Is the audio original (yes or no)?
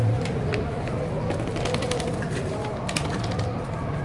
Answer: yes